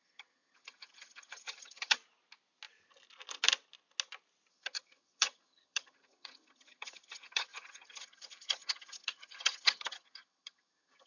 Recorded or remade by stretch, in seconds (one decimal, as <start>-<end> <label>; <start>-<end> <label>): 0.0-2.0 remade; 2.0-4.5 recorded; 4.5-11.1 remade

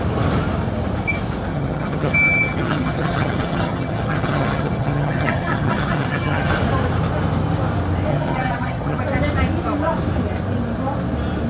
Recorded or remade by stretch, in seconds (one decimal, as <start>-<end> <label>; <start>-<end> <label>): 0.0-1.5 recorded; 1.5-6.5 remade; 6.5-8.1 recorded; 8.1-9.0 remade; 9.0-11.5 recorded

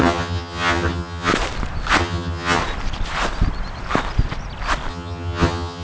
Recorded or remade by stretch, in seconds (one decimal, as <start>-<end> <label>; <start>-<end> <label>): 0.0-1.3 remade; 1.3-2.0 recorded; 2.0-2.6 remade; 2.6-4.9 recorded; 4.9-5.8 remade

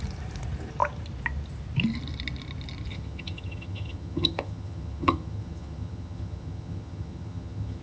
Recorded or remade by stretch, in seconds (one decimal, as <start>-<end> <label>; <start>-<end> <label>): 0.0-2.9 recorded; 2.9-7.8 remade

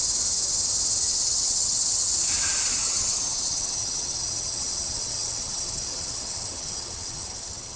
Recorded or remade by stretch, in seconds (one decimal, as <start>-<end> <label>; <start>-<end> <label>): 0.0-1.1 recorded; 1.1-2.1 remade; 2.1-2.8 recorded; 2.8-7.8 remade

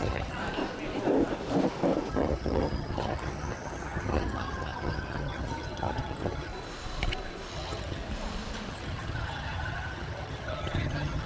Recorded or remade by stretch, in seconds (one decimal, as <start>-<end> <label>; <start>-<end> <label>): 0.0-0.4 remade; 0.4-2.1 recorded; 2.1-6.5 remade; 6.5-7.5 recorded; 7.5-8.0 remade; 8.0-8.7 recorded; 8.7-11.3 remade

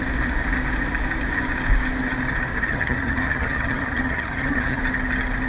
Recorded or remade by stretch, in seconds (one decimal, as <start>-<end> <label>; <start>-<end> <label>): 0.0-2.7 recorded; 2.7-4.8 remade; 4.8-5.5 recorded